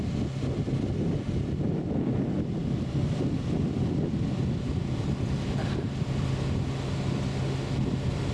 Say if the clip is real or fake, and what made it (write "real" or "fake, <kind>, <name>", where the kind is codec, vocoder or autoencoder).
real